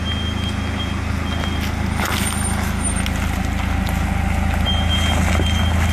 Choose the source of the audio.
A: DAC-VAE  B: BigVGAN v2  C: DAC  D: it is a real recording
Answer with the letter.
D